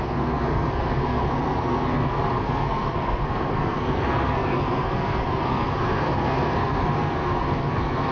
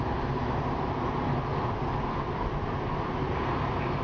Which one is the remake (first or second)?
first